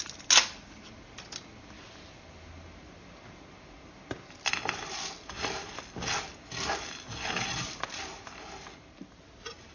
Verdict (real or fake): real